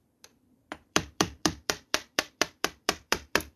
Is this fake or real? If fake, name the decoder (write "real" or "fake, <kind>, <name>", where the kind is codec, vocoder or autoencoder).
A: fake, vocoder, BigVGAN v2